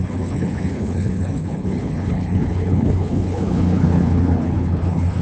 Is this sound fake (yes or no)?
yes